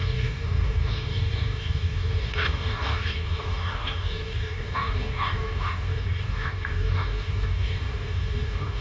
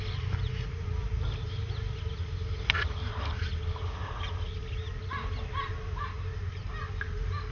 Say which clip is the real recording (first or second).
second